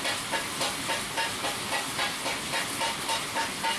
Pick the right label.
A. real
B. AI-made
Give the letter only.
A